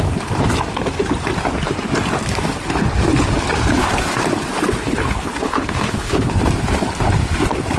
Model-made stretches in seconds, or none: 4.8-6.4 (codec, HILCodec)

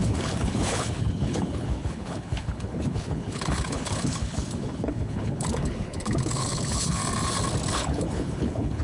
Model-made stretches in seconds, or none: 0.0-7.0 (codec, HILCodec); 7.7-8.8

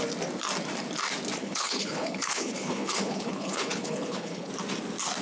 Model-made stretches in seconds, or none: 1.4-4.5 (codec, HILCodec)

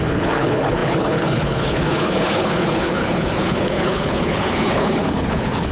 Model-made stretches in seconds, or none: 0.0-5.7 (codec, HILCodec)

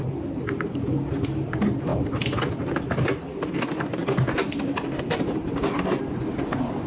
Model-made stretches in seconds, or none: none

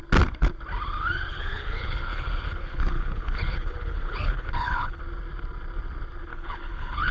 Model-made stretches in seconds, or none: 1.3-5.0 (codec, HILCodec); 6.3-7.1